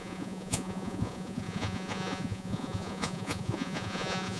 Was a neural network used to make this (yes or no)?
yes